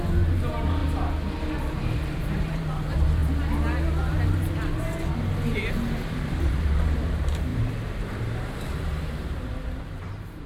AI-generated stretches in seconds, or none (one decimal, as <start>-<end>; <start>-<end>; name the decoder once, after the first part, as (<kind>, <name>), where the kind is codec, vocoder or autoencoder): 0.0-0.8 (vocoder, BigVGAN v2); 1.6-3.2; 5.9-10.5